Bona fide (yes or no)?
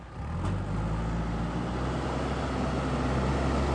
yes